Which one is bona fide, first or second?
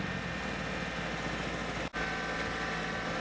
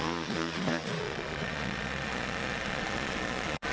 first